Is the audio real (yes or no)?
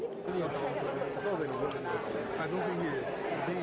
yes